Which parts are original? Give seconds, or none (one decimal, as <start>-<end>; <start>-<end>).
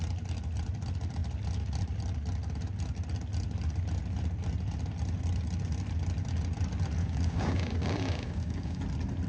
0.0-7.0; 8.8-9.3